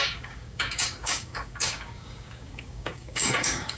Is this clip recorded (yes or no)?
no